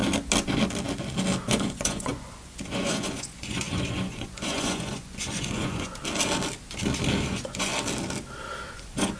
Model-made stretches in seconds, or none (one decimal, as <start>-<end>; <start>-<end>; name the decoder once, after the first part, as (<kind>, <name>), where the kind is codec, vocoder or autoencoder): 1.4-6.0 (vocoder, Vocos); 7.3-7.7; 8.7-9.2